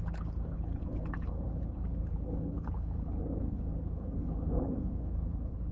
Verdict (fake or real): fake